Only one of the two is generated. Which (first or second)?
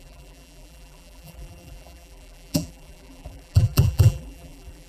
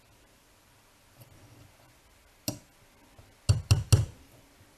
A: first